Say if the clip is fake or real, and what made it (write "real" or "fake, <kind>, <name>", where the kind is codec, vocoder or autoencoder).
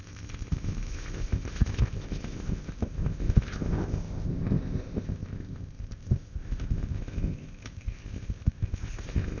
fake, codec, ZipCodec